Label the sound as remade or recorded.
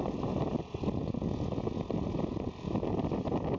recorded